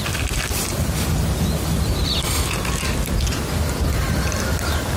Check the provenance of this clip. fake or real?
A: real